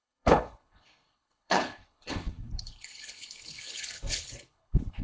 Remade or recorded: remade